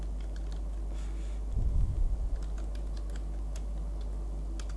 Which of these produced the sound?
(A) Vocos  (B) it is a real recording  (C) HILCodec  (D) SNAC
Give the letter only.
B